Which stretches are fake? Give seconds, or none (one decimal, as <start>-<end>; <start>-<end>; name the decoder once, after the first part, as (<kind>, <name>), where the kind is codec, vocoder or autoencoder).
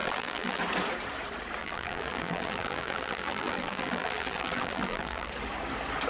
0.0-0.6 (vocoder, BigVGAN v2); 1.6-5.3